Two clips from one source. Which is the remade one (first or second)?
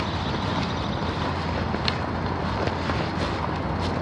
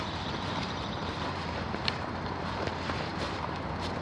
second